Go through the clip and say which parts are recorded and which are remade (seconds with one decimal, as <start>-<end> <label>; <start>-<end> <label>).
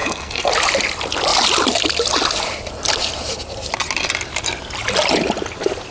0.0-0.5 remade; 0.5-5.9 recorded